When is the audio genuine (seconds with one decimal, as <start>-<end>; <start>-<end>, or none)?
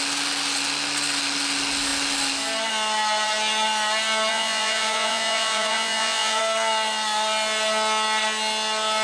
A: 0.0-4.3; 6.4-9.0